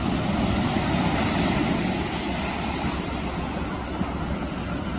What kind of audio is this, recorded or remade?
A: recorded